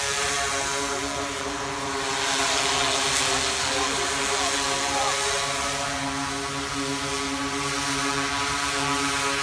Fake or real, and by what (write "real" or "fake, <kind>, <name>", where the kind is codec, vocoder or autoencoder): real